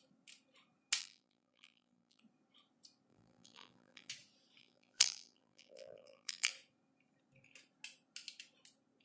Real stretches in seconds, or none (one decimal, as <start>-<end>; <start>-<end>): 0.0-1.0; 2.2-3.1; 4.1-4.6; 6.5-9.0